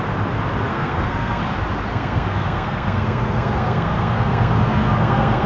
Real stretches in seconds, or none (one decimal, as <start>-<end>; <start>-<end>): 0.0-0.7; 1.4-1.9